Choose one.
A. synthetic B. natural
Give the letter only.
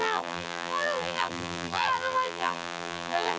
A